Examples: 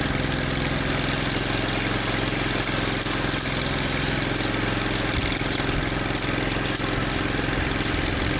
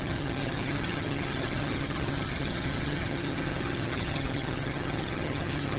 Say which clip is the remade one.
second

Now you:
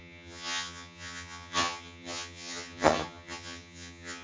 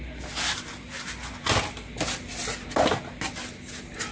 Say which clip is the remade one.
first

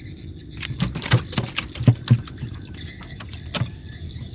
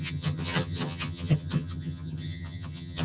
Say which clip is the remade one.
second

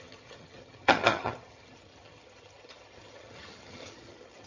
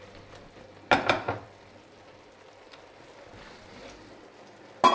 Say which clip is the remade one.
first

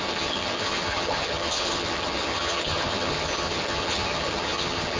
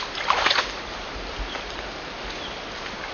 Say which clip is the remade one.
first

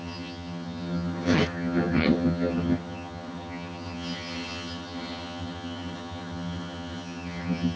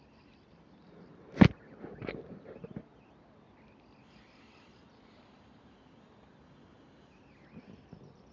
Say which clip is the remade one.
first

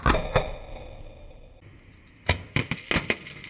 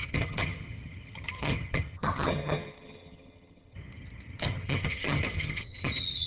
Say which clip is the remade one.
second